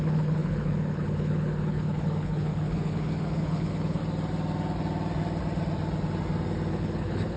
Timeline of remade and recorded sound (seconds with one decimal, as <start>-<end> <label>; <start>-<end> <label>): 0.0-4.0 remade; 4.0-6.7 recorded; 6.7-7.4 remade